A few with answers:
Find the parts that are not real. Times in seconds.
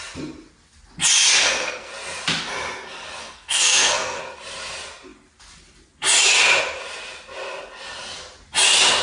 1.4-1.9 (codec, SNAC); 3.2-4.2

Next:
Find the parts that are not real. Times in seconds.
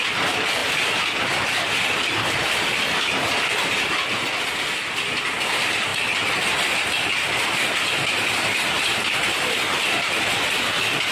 none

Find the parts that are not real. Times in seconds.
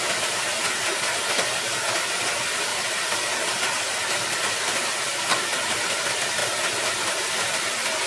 2.7-3.3 (vocoder, BigVGAN v2); 6.4-7.4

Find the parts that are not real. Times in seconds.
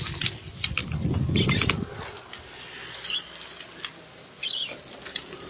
none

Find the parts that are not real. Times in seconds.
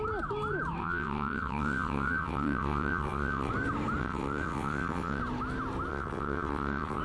0.8-3.5 (vocoder, WaveNeXt); 4.0-5.2; 5.9-7.0